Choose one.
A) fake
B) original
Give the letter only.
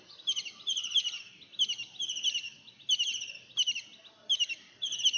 B